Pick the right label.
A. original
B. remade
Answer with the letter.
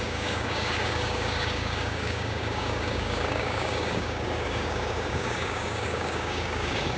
B